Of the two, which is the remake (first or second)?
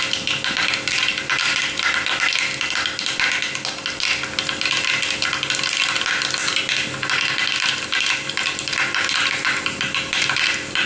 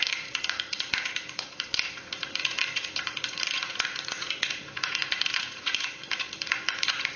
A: second